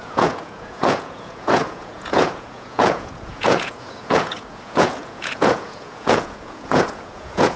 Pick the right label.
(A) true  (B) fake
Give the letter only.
B